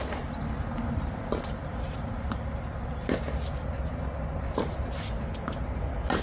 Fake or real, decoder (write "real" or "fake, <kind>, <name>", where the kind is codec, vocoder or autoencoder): real